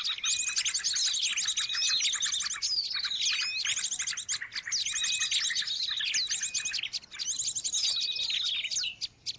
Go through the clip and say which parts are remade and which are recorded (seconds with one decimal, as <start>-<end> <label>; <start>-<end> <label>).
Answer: 0.0-9.4 recorded